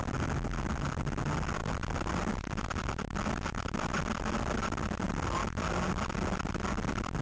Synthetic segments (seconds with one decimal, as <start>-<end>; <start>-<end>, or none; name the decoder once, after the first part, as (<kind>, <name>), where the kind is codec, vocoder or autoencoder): none